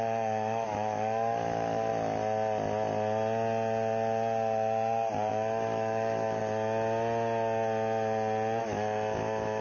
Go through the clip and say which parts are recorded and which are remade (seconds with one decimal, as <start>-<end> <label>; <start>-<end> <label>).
0.0-1.9 remade; 1.9-5.3 recorded; 5.3-6.4 remade; 6.4-8.6 recorded; 8.6-9.6 remade